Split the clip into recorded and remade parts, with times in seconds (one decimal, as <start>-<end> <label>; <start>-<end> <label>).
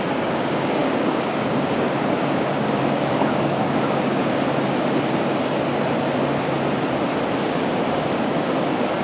0.0-4.2 remade; 4.2-7.5 recorded; 7.5-9.0 remade